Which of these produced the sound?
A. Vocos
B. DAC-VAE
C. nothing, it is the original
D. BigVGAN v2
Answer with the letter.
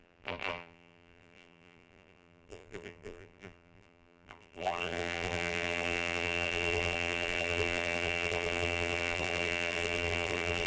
D